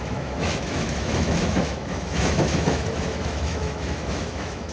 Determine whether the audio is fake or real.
fake